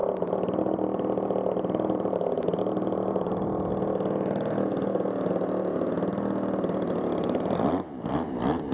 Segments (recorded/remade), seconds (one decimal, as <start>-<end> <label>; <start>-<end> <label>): 0.0-3.7 remade; 3.7-8.7 recorded